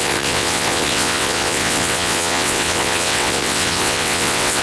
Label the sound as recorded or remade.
remade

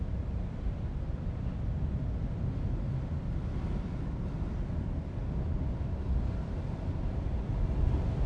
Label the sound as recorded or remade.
recorded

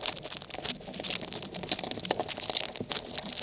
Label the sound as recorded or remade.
recorded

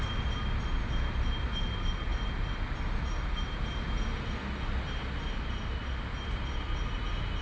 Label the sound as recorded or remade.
recorded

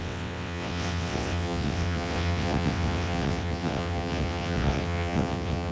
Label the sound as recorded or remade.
remade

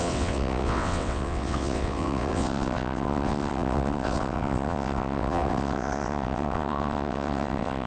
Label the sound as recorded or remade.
remade